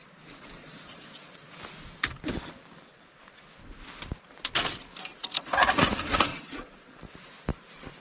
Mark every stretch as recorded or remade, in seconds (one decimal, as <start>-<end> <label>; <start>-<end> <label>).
0.0-0.6 recorded; 0.6-1.6 remade; 1.6-6.3 recorded; 6.3-7.0 remade; 7.0-8.0 recorded